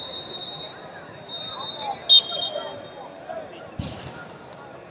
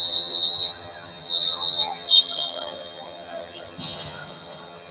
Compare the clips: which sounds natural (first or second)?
first